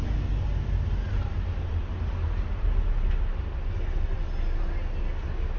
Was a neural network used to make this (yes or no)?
no